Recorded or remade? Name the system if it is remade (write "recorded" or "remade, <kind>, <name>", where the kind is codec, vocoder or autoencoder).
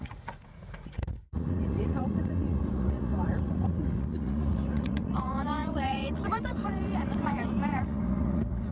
remade, vocoder, Vocos